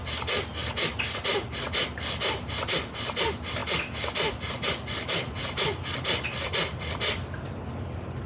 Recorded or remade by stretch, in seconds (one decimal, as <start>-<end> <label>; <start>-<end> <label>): 0.0-8.3 recorded